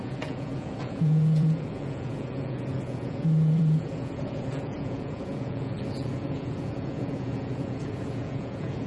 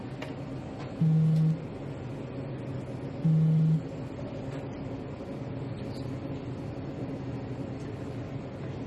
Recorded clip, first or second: second